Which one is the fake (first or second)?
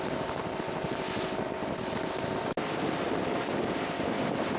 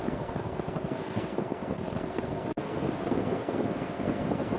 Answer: second